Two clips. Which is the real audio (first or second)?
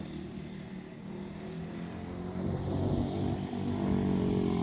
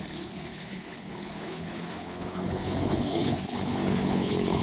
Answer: first